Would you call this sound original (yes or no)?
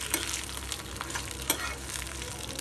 yes